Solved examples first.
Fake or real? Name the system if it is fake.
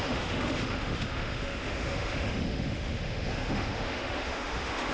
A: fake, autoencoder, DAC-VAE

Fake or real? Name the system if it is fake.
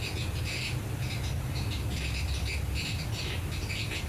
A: real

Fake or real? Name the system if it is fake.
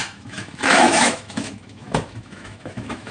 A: fake, autoencoder, DAC-VAE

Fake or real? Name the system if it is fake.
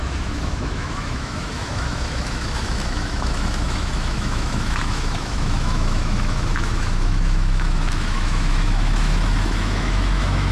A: fake, autoencoder, DAC-VAE